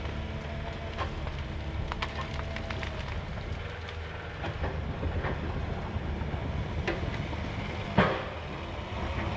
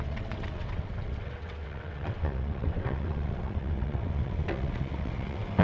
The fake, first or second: second